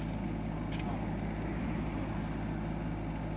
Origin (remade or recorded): recorded